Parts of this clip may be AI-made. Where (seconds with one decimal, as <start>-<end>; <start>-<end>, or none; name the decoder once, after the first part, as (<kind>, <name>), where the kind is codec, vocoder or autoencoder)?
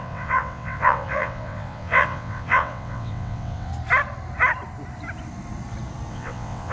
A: 0.0-3.7 (vocoder, WaveNeXt); 6.1-6.7